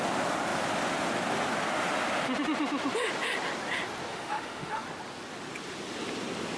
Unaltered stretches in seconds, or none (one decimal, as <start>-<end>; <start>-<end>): 0.0-4.1; 4.8-6.6